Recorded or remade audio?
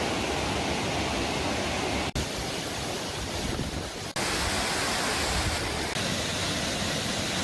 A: recorded